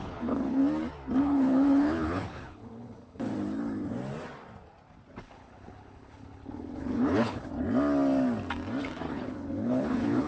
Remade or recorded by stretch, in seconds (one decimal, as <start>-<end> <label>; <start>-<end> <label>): 0.0-0.6 remade; 0.6-1.2 recorded; 1.2-3.3 remade; 3.3-5.2 recorded; 5.2-7.5 remade; 7.5-9.1 recorded; 9.1-10.3 remade